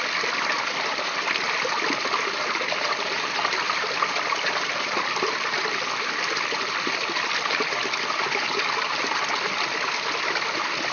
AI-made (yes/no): no